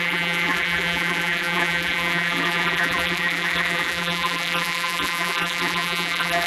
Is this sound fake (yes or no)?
yes